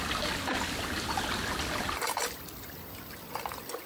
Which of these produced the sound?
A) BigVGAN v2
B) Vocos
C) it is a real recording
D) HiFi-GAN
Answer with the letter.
C